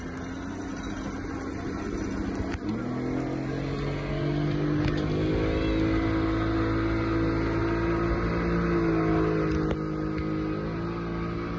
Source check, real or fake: real